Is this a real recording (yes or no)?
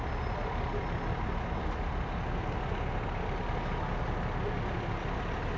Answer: yes